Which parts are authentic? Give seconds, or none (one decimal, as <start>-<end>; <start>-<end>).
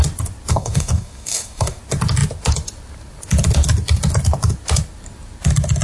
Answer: 0.0-0.5; 1.8-5.8